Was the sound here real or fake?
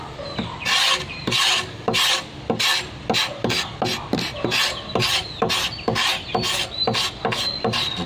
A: real